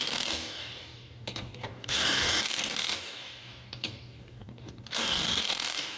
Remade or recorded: remade